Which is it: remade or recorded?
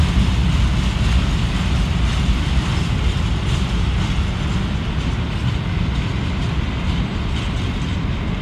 recorded